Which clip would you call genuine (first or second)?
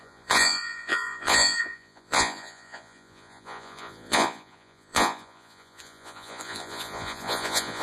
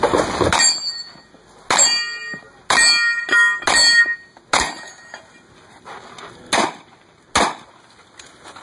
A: second